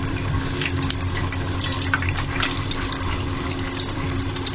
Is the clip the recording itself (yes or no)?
yes